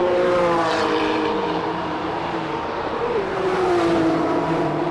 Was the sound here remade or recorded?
remade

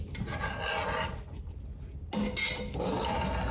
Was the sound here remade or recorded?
recorded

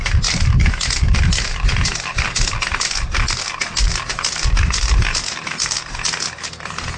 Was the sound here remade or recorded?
recorded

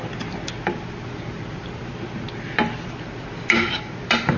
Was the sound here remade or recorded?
recorded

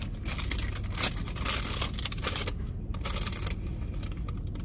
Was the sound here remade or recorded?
recorded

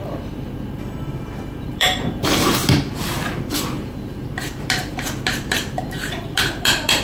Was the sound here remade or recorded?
remade